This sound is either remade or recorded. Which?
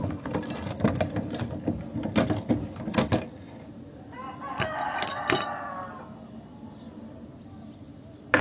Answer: recorded